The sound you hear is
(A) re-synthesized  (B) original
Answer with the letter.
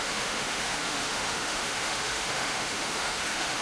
A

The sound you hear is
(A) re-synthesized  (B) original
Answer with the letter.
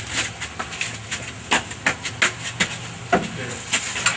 B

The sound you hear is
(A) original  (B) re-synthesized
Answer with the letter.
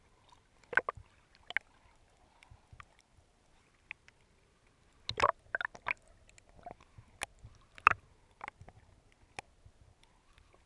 A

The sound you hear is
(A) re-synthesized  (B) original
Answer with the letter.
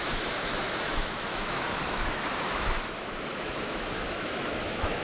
A